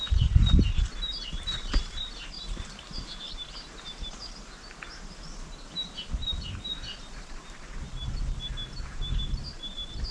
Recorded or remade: recorded